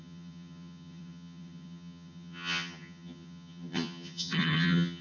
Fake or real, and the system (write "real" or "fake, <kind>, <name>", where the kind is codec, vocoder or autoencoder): fake, vocoder, HiFi-GAN